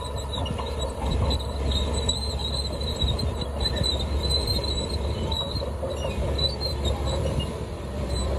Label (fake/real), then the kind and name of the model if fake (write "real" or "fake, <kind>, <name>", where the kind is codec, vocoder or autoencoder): fake, vocoder, BigVGAN v2